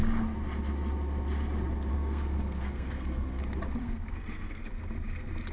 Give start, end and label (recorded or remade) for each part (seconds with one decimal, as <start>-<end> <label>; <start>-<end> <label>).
0.0-1.9 recorded; 1.9-3.4 remade; 3.4-3.8 recorded; 3.8-4.7 remade; 4.7-5.5 recorded